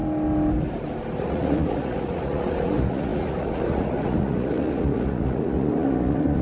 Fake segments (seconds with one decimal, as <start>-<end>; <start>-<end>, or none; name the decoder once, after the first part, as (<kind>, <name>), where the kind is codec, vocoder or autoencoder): 1.2-6.4 (vocoder, Vocos)